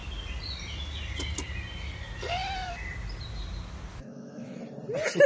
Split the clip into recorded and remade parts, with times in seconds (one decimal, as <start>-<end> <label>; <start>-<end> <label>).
0.0-3.9 recorded; 3.9-4.6 remade; 4.6-5.3 recorded